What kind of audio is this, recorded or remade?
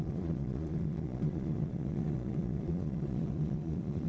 remade